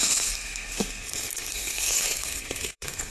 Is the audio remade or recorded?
remade